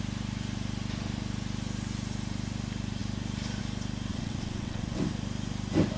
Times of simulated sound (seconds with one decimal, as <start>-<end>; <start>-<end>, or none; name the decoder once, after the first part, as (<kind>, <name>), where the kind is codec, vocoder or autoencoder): 4.1-5.0 (vocoder, WaveNeXt)

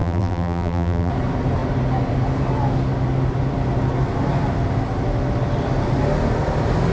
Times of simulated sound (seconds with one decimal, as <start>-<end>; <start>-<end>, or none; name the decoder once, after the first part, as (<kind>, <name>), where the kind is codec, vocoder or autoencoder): 0.0-1.1 (vocoder, BigVGAN v2)

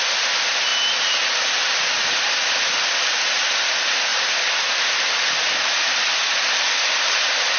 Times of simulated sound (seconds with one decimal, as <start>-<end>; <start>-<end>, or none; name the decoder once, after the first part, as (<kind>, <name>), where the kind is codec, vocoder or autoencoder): none

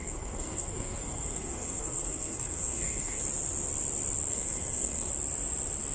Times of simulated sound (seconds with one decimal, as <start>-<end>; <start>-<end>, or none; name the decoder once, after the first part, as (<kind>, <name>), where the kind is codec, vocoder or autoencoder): 0.0-3.2 (codec, SNAC); 4.3-5.1

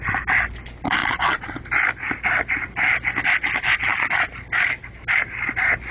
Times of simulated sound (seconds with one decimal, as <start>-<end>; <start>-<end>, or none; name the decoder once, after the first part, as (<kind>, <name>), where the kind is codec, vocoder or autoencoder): 1.0-1.6 (vocoder, Vocos)

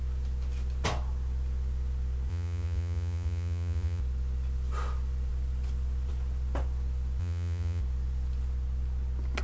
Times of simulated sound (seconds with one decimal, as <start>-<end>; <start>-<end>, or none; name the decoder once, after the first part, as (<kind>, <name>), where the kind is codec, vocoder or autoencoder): 2.3-4.0 (vocoder, Vocos); 7.2-7.8

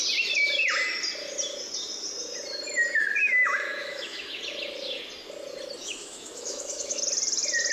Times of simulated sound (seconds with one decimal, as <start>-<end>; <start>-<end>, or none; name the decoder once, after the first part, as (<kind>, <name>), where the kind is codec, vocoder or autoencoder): 3.2-4.4 (autoencoder, DAC-VAE); 5.8-7.0

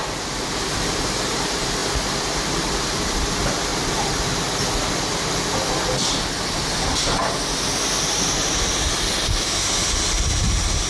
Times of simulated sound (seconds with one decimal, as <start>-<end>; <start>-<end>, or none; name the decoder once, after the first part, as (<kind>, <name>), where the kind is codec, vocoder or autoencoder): none